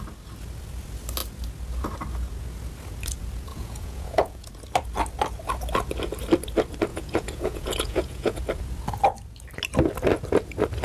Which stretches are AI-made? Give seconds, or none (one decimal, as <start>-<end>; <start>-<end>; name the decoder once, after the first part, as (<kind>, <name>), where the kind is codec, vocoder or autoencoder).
3.5-4.5 (vocoder, Vocos); 6.9-8.4